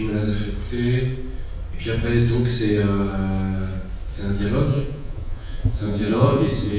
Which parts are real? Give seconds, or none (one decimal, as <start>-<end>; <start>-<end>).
0.0-4.7